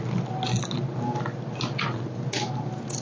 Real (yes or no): yes